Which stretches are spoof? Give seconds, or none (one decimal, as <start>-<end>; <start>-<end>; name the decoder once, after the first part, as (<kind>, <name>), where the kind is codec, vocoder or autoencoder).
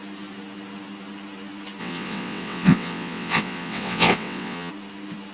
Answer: 1.8-4.7 (vocoder, WaveNeXt)